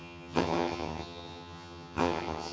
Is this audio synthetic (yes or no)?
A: yes